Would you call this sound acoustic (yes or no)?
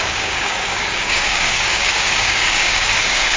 no